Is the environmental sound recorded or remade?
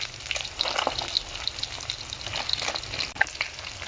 recorded